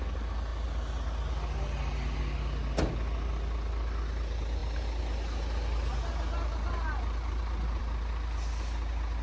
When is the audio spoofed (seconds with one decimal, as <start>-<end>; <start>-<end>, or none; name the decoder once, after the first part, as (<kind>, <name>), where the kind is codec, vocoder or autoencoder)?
none